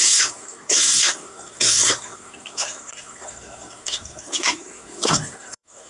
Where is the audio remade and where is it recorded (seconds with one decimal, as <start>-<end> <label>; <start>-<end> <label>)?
0.0-5.9 remade